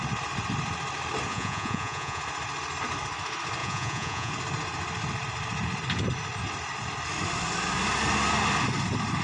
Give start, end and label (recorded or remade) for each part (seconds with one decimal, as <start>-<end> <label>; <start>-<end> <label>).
0.0-1.3 recorded; 1.3-2.2 remade; 2.2-3.6 recorded; 3.6-4.3 remade; 4.3-9.2 recorded